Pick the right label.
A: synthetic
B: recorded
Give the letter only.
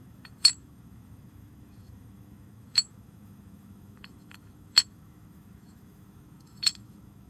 A